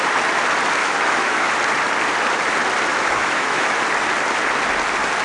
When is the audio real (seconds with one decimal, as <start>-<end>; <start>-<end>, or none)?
0.0-0.8; 1.5-2.9; 3.8-5.2